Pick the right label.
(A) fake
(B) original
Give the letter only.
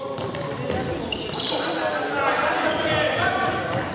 B